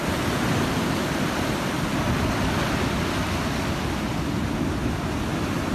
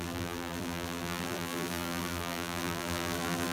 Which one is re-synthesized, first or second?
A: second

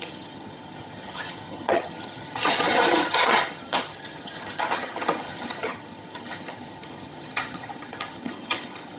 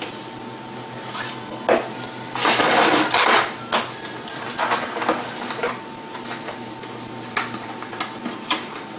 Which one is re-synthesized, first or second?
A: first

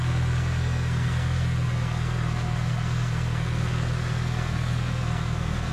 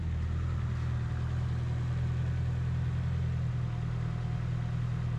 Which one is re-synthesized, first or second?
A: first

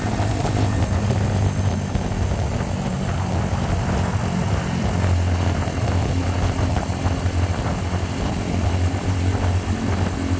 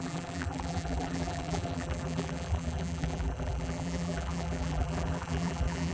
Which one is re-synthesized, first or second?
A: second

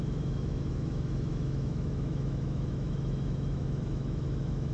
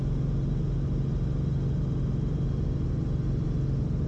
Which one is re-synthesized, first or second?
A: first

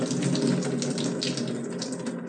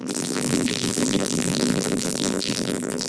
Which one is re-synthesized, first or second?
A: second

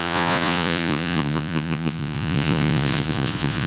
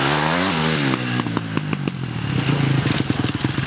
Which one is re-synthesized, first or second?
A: first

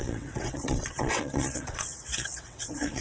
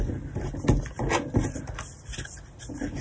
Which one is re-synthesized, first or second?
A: first